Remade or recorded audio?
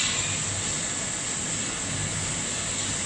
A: recorded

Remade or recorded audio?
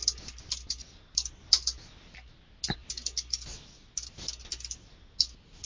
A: recorded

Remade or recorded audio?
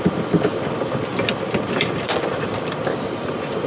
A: recorded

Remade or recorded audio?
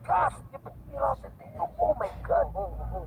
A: recorded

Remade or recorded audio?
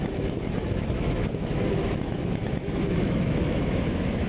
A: remade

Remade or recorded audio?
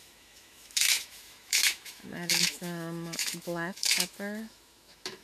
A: remade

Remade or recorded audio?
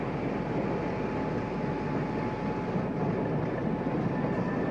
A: recorded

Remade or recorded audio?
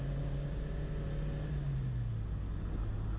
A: recorded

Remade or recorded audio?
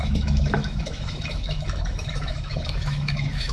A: remade